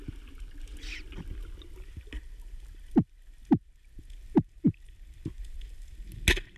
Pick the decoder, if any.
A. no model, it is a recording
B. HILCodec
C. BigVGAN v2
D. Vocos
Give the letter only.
A